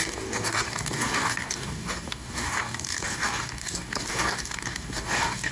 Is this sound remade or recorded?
remade